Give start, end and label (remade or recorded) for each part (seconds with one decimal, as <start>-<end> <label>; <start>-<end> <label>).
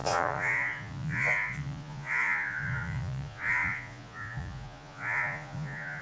0.0-6.0 remade